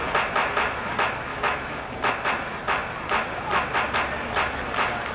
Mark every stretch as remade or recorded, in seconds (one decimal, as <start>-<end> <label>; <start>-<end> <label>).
0.0-1.3 recorded; 1.3-1.8 remade; 1.8-5.1 recorded